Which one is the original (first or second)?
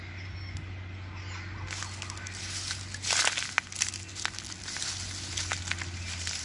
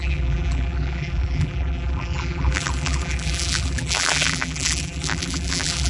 first